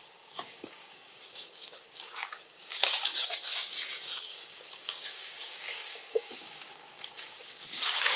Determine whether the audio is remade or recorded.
remade